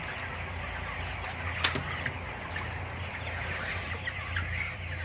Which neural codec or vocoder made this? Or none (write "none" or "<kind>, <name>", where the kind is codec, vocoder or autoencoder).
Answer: none